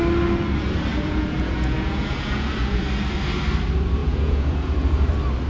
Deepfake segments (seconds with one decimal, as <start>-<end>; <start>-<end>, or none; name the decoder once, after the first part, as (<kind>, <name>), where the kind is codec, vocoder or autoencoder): 0.9-2.8 (vocoder, Vocos); 4.0-5.1